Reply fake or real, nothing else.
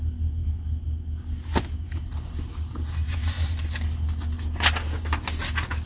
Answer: real